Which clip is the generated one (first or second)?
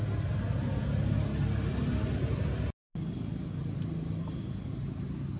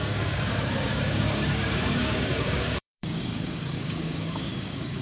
second